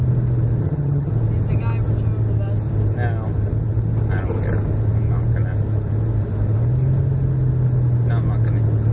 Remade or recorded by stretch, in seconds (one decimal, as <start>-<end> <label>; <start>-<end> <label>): 0.0-0.6 recorded; 0.6-1.1 remade; 1.1-8.9 recorded